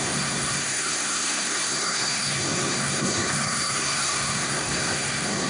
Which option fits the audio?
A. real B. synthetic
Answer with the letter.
B